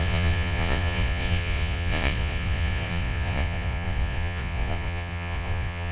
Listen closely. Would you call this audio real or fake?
fake